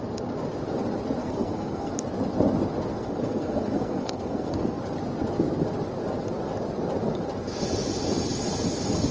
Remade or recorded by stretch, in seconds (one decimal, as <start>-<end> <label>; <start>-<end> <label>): 0.0-1.2 recorded; 1.2-1.9 remade; 1.9-2.9 recorded; 2.9-4.8 remade; 4.8-9.1 recorded

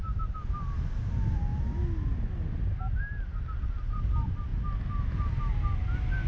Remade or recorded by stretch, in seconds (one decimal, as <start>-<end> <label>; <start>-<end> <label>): 0.0-6.3 recorded

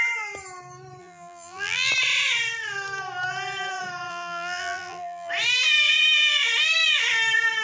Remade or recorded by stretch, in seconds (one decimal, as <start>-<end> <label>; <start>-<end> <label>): 0.0-1.0 recorded; 1.0-1.9 remade; 1.9-4.1 recorded; 4.1-5.3 remade; 5.3-7.6 recorded

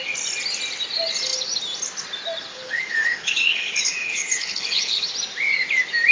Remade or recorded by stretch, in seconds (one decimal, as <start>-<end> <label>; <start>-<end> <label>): 0.0-2.5 recorded; 2.5-5.1 remade; 5.1-6.1 recorded

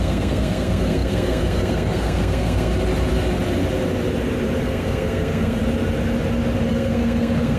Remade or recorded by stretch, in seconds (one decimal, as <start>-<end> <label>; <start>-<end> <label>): 0.0-2.7 remade; 2.7-4.6 recorded; 4.6-5.6 remade; 5.6-6.7 recorded; 6.7-7.6 remade